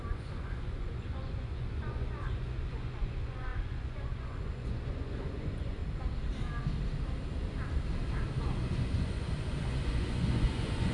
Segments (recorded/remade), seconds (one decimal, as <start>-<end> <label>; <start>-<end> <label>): 0.0-5.8 remade; 5.8-8.4 recorded; 8.4-10.9 remade